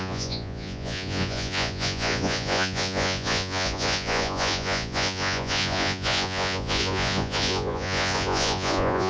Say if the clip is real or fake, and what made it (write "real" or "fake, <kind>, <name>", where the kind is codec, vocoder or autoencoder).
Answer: fake, vocoder, Vocos